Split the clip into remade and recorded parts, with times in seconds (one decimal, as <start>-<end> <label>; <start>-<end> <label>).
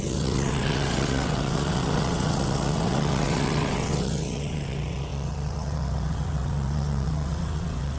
0.0-8.0 remade